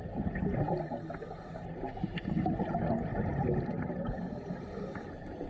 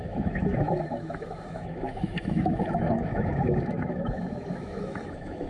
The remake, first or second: second